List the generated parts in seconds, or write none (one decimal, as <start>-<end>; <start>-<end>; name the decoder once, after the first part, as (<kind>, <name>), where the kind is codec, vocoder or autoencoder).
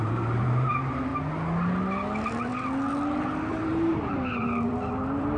0.0-1.1 (vocoder, BigVGAN v2); 3.5-5.4